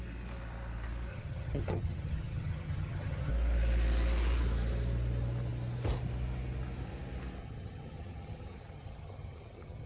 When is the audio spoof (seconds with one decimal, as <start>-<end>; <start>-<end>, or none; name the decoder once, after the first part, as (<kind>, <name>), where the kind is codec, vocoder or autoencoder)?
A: 1.1-3.3 (vocoder, HiFi-GAN); 7.4-9.9